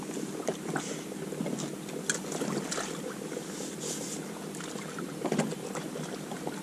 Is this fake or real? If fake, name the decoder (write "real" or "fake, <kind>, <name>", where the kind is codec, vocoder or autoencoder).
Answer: real